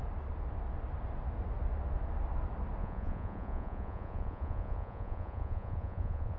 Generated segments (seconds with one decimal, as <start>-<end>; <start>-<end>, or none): 2.8-6.4